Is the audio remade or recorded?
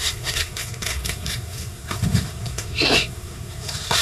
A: remade